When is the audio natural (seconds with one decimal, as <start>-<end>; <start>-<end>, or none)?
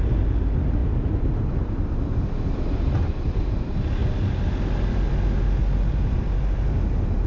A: 0.0-7.3